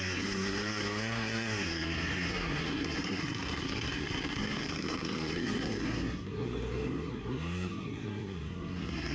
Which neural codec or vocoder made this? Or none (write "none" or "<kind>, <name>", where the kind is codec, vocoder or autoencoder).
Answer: codec, SNAC